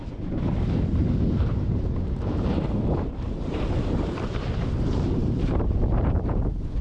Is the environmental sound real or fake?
fake